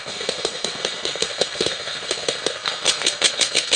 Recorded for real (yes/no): no